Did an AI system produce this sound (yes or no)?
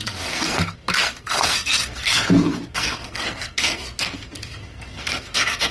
yes